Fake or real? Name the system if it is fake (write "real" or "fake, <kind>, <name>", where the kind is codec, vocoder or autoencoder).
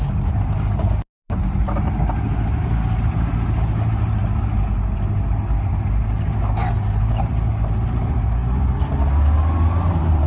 real